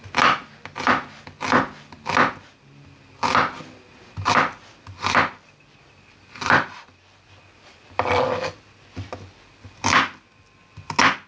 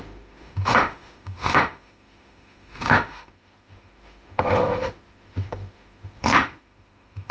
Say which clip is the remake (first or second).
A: second